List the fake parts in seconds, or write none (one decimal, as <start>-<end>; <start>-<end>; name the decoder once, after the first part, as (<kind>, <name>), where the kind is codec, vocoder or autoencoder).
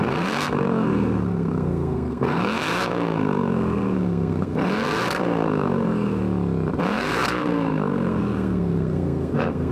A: 0.0-6.2 (codec, SNAC); 6.8-9.7